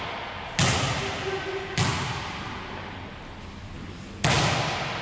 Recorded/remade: recorded